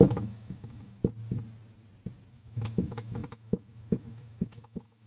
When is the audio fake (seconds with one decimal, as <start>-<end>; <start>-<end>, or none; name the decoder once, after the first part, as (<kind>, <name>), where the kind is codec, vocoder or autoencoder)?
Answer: 0.0-1.0 (autoencoder, DAC-VAE); 2.3-5.1